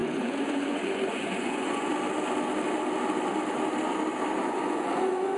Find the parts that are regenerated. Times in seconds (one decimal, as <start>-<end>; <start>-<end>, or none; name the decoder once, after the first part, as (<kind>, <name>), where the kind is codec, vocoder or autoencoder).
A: 0.0-1.9 (vocoder, Vocos); 4.4-5.4